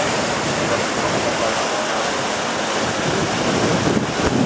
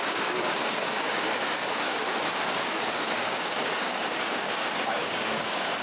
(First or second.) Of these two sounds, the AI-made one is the second